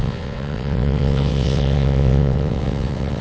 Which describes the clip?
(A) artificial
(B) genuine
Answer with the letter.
A